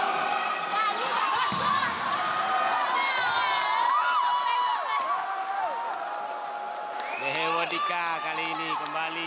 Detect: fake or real real